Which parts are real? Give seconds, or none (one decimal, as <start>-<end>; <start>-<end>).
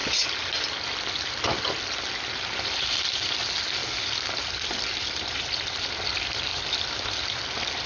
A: 0.0-3.8; 5.9-6.5; 7.4-7.9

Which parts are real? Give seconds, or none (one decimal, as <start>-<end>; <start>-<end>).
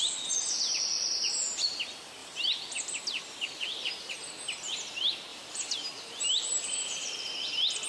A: 0.0-2.2; 4.3-5.3; 7.3-7.9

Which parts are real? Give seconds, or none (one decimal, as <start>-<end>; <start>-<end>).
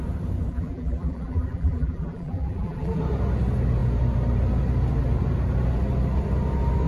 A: 0.0-0.5; 3.0-6.9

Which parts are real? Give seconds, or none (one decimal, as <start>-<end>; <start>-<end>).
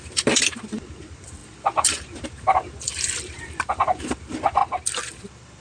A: 4.6-5.1